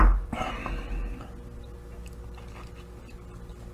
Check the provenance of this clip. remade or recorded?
recorded